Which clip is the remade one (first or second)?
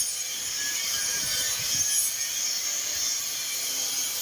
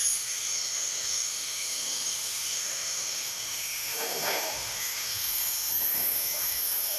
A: second